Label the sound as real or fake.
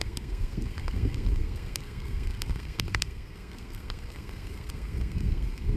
fake